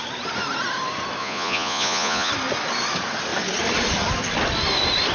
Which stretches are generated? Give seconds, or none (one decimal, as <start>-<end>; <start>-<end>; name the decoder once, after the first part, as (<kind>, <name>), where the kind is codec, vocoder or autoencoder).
1.2-2.3 (vocoder, Vocos)